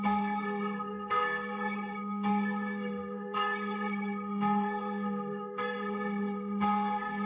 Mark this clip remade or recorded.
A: remade